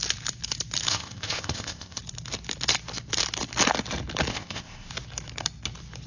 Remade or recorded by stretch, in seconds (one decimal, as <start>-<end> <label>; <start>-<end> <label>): 0.0-0.9 recorded; 0.9-2.0 remade; 2.0-4.3 recorded; 4.3-4.9 remade; 4.9-6.1 recorded